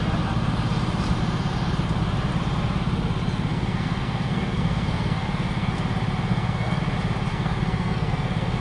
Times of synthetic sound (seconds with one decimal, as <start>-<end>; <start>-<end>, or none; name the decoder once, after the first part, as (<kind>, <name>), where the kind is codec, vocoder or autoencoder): 3.5-5.8 (codec, SNAC); 6.3-6.8; 7.3-8.6